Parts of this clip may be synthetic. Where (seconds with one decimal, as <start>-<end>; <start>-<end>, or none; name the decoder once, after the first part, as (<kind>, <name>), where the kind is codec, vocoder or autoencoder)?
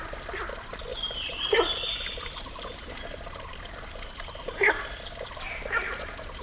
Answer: none